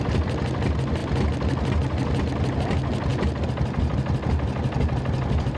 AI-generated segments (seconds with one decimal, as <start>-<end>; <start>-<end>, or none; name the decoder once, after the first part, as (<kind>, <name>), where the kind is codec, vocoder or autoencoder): none